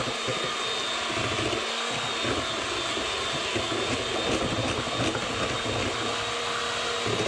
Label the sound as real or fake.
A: real